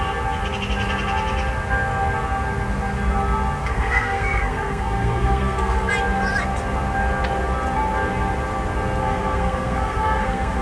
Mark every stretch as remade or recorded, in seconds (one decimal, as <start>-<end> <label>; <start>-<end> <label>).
0.0-3.6 recorded; 3.6-5.9 remade; 5.9-9.0 recorded; 9.0-10.6 remade

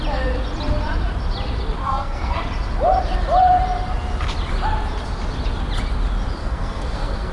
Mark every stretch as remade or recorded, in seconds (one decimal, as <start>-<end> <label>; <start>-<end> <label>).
0.0-1.8 recorded; 1.8-2.4 remade; 2.4-6.4 recorded; 6.4-7.3 remade

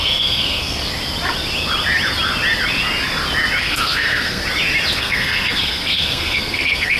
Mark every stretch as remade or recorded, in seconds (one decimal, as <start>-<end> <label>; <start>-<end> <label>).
0.0-0.8 remade; 0.8-3.6 recorded; 3.6-4.4 remade; 4.4-5.0 recorded; 5.0-7.0 remade

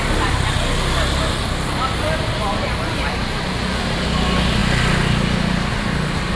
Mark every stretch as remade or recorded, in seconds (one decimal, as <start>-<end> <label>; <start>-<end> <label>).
0.0-6.4 recorded

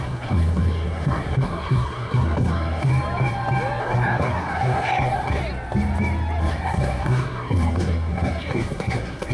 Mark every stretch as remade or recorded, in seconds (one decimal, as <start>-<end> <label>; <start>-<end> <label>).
0.0-2.9 remade; 2.9-3.8 recorded; 3.8-5.4 remade; 5.4-6.4 recorded; 6.4-9.3 remade

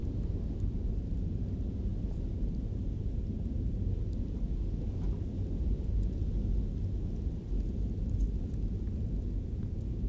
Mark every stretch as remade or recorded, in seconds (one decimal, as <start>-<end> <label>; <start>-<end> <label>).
0.0-10.1 recorded

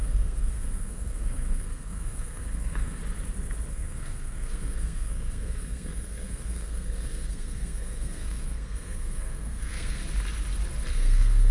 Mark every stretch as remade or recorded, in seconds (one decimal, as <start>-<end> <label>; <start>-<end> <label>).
0.0-3.0 remade; 3.0-3.7 recorded; 3.7-10.0 remade; 10.0-10.9 recorded; 10.9-11.5 remade